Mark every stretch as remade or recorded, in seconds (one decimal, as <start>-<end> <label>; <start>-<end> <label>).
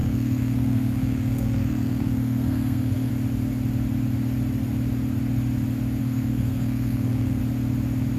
0.0-3.1 remade; 3.1-6.0 recorded; 6.0-7.4 remade; 7.4-8.2 recorded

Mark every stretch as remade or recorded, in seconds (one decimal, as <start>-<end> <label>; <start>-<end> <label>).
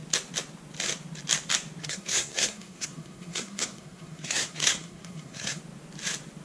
0.0-1.8 recorded; 1.8-5.6 remade; 5.6-6.4 recorded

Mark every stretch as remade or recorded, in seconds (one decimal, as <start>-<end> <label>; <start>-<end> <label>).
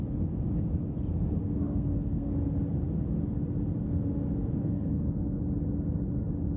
0.0-1.4 recorded; 1.4-2.3 remade; 2.3-4.6 recorded; 4.6-5.4 remade; 5.4-6.6 recorded